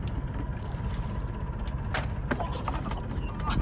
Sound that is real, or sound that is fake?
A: real